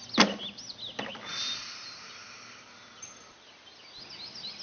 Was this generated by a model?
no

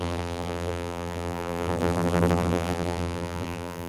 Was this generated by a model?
yes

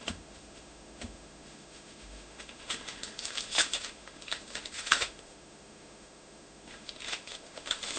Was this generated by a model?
yes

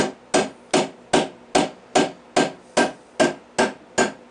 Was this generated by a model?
no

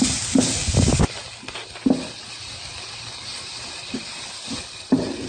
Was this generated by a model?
no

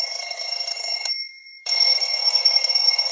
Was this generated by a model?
yes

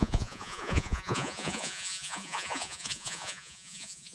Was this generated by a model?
yes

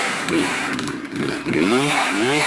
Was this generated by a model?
yes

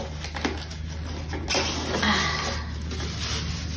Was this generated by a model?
no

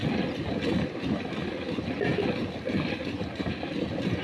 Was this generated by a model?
no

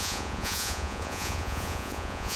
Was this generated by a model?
yes